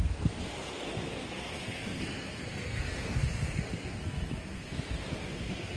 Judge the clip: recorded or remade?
remade